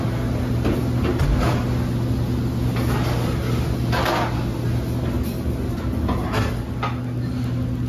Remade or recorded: recorded